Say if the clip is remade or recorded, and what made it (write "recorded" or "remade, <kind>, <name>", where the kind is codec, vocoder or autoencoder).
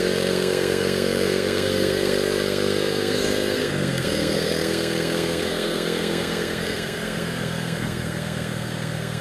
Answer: remade, codec, SNAC